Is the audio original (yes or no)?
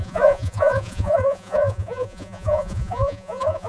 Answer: no